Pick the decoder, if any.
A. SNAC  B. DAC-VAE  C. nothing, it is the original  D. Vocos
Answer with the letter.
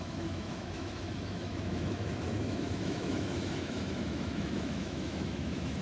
B